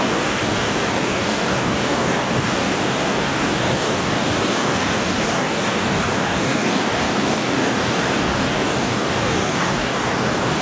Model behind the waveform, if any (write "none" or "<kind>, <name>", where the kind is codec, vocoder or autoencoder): codec, DAC